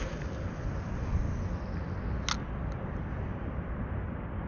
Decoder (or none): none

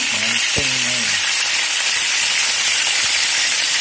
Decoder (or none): none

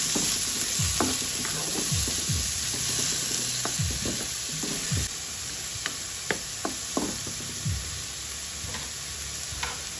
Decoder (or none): none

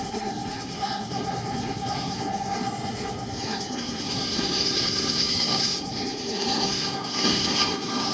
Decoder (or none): codec, SNAC